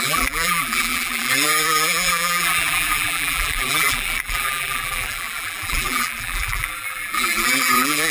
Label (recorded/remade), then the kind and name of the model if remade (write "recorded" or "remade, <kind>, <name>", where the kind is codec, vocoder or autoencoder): remade, vocoder, BigVGAN v2